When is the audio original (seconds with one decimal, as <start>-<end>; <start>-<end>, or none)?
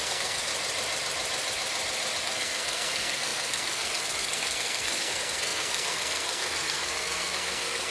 0.5-2.2